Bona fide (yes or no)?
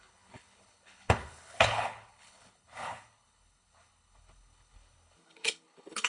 no